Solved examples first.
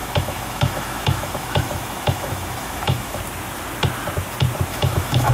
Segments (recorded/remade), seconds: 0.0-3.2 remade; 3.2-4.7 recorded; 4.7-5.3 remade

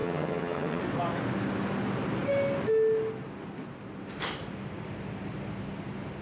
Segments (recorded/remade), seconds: 0.0-0.8 remade; 0.8-6.2 recorded

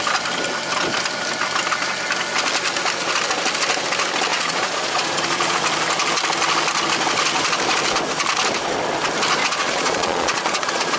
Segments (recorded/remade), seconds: 0.0-4.3 recorded; 4.3-5.6 remade; 5.6-9.4 recorded; 9.4-11.0 remade

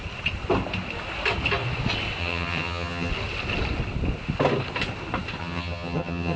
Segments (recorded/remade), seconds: 0.0-2.2 recorded; 2.2-3.1 remade; 3.1-5.4 recorded; 5.4-6.4 remade

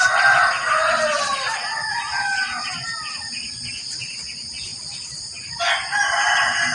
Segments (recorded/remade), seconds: 0.0-6.7 recorded

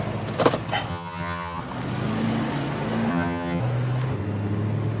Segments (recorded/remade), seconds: 0.0-0.9 recorded; 0.9-1.6 remade; 1.6-3.1 recorded; 3.1-3.6 remade; 3.6-5.0 recorded